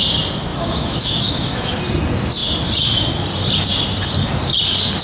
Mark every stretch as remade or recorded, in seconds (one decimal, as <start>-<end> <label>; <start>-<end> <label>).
0.0-0.5 recorded; 0.5-1.8 remade; 1.8-5.0 recorded